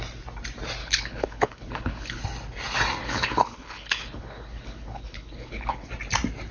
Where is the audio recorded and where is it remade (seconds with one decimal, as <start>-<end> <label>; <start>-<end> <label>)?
0.0-0.8 recorded; 0.8-2.2 remade; 2.2-3.0 recorded; 3.0-5.9 remade; 5.9-6.5 recorded